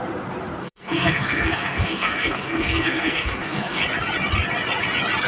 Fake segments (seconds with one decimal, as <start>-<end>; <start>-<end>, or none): 0.6-3.8